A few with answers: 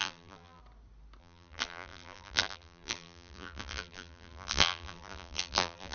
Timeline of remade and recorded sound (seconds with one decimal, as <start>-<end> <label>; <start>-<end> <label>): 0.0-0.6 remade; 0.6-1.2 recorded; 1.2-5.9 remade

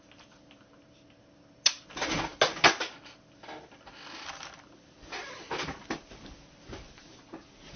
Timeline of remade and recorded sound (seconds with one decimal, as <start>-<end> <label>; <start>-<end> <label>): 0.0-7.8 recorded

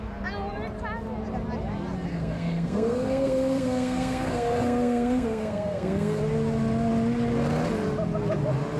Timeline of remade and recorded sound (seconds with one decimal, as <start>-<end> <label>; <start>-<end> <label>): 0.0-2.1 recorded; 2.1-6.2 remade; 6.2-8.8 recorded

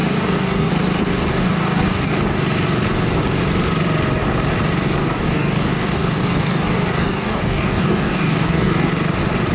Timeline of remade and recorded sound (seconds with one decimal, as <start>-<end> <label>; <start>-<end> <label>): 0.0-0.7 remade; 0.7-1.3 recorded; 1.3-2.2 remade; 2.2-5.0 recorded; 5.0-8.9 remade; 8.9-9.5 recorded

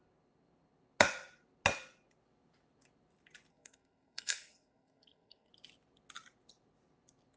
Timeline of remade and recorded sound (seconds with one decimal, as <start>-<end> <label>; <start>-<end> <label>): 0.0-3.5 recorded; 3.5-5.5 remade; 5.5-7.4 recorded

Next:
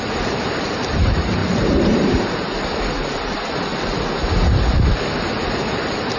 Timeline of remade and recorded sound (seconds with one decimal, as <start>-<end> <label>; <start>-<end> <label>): 0.0-3.7 remade; 3.7-5.1 recorded; 5.1-6.2 remade

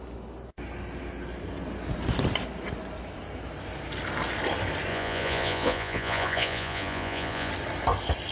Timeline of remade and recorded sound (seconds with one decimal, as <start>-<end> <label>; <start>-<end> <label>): 0.0-4.9 recorded; 4.9-7.5 remade; 7.5-8.3 recorded

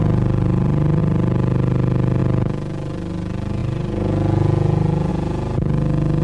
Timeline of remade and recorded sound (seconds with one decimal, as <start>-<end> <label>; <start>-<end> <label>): 0.0-6.2 recorded